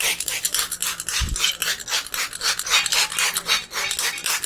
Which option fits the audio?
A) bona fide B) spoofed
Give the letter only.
A